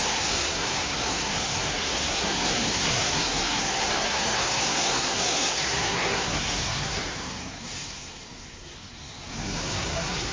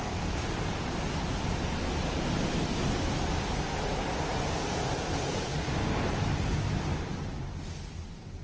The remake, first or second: first